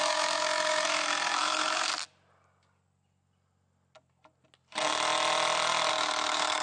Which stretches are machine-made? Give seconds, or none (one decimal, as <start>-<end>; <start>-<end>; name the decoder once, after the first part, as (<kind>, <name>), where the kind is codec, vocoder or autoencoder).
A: 0.0-1.9 (autoencoder, DAC-VAE); 5.9-6.6